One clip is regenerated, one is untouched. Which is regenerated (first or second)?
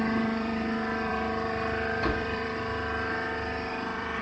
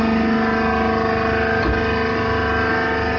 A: first